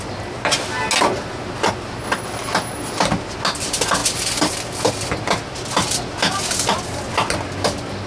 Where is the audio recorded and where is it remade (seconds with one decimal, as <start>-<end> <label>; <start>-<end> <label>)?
0.0-8.1 recorded